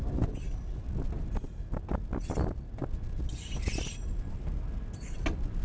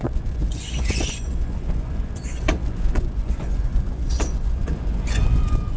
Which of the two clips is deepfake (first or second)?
second